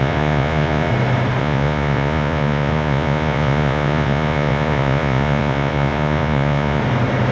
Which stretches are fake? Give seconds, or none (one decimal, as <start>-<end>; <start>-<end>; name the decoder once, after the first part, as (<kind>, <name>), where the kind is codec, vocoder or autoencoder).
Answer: 0.0-0.9 (vocoder, Vocos); 1.4-6.8